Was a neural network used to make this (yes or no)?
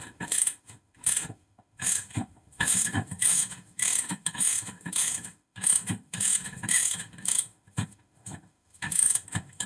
yes